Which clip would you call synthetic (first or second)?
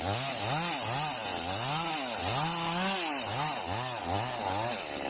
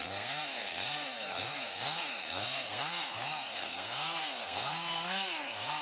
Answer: second